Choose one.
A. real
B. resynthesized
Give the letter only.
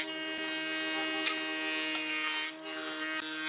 A